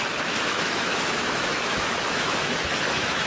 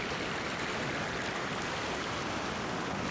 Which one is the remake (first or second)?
first